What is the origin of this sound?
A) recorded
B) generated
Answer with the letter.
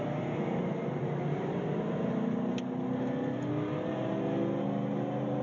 A